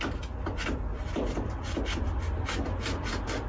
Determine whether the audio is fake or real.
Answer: real